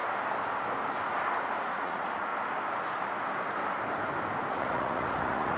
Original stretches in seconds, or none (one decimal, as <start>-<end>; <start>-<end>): 0.0-1.7; 2.3-4.5